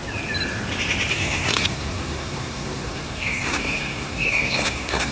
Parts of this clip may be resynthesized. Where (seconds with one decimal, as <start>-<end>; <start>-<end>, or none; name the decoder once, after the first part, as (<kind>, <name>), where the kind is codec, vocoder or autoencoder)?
1.1-5.1 (codec, SNAC)